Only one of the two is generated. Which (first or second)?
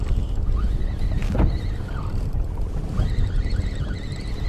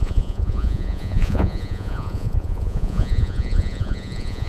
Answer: second